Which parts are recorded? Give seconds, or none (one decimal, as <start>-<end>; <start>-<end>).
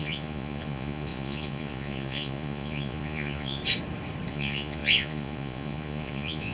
3.6-4.3